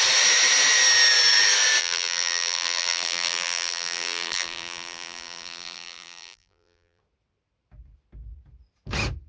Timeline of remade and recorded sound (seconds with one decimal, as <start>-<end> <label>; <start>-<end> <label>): 0.0-1.8 recorded; 1.8-7.0 remade; 7.0-9.3 recorded